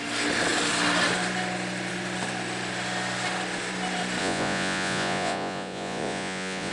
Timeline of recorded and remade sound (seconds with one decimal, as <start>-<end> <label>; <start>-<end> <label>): 0.0-4.2 recorded; 4.2-6.7 remade